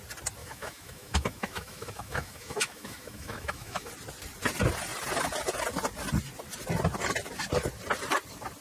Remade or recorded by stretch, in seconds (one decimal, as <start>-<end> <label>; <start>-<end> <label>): 0.0-0.4 recorded; 0.4-3.9 remade; 3.9-8.6 recorded